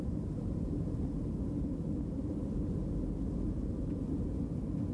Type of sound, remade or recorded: recorded